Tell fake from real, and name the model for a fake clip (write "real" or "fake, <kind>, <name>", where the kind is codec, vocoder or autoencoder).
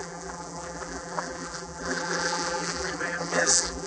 fake, vocoder, BigVGAN v2